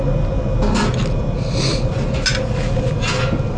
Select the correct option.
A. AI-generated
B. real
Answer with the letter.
B